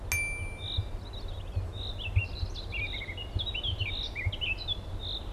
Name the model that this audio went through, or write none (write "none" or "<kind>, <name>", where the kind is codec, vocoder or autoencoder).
none